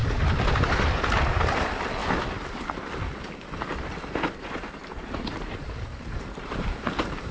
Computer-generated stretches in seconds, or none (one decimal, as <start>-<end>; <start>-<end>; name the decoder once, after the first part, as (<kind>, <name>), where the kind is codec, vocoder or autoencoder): 0.0-2.0 (vocoder, BigVGAN v2); 4.7-7.3